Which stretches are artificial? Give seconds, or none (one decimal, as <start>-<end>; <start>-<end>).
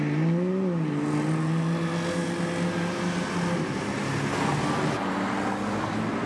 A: none